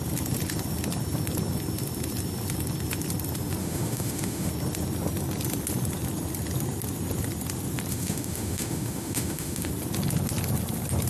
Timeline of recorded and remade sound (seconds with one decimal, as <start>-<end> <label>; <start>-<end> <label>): 0.0-3.6 recorded; 3.6-4.5 remade; 4.5-7.9 recorded; 7.9-9.7 remade; 9.7-11.1 recorded